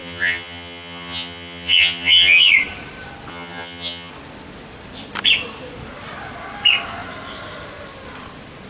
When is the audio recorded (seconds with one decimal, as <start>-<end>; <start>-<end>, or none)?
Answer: 2.5-3.3; 4.1-8.7